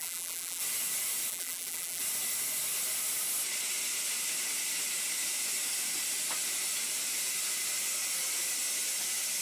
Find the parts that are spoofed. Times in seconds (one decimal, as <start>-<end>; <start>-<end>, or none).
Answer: 0.0-0.6; 1.3-2.0